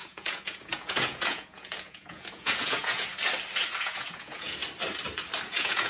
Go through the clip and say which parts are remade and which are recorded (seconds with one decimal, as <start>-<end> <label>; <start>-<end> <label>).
0.0-3.1 remade; 3.1-3.8 recorded; 3.8-4.6 remade; 4.6-5.4 recorded; 5.4-5.9 remade